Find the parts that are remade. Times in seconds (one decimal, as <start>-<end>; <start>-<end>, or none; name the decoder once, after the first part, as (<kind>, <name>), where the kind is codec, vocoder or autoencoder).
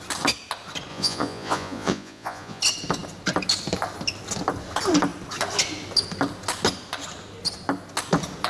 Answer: 0.9-2.6 (vocoder, Vocos)